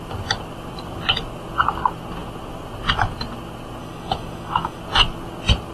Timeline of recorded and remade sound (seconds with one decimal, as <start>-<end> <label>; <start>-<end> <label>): 0.0-3.8 recorded; 3.8-4.8 remade; 4.8-5.7 recorded